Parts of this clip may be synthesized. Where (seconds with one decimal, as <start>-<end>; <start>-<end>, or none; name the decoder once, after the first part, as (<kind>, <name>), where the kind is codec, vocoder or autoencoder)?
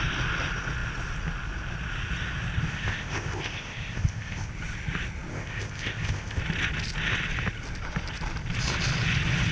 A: 2.7-4.5 (codec, ZipCodec); 5.3-6.4